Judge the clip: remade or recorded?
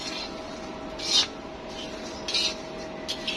recorded